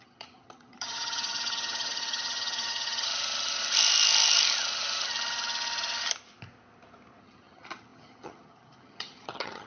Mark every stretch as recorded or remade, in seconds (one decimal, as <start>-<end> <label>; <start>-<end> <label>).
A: 0.0-3.1 remade; 3.1-7.2 recorded; 7.2-9.7 remade